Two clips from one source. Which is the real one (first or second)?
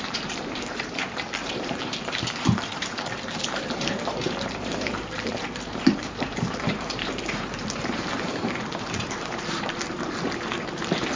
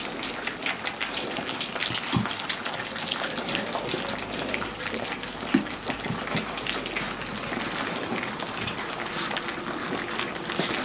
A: second